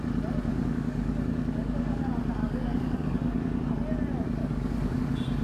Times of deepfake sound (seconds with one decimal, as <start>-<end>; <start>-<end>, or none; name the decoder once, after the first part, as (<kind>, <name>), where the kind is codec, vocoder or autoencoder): 0.5-2.0 (codec, DAC); 2.4-3.7; 4.4-5.0